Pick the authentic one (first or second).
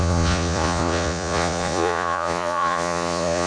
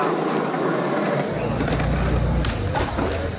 second